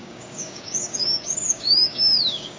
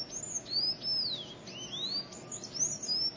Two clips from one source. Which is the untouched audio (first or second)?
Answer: second